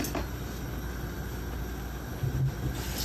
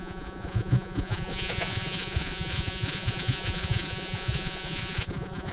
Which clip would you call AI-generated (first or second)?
second